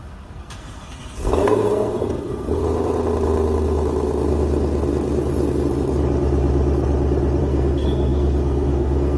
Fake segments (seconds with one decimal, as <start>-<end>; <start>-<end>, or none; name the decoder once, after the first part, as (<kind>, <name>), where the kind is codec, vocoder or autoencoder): 0.0-2.6 (codec, SNAC); 7.4-9.2